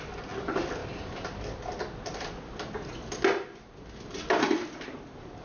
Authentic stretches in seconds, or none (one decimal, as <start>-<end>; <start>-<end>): 0.0-5.4